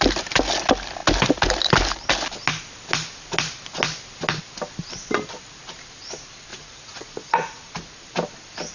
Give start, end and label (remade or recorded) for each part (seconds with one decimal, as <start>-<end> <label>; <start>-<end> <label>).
0.0-6.5 recorded; 6.5-7.7 remade; 7.7-8.7 recorded